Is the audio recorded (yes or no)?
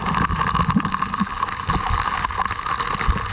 yes